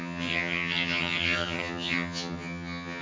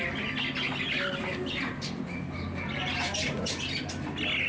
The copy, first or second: first